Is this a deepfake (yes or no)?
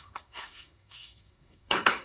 yes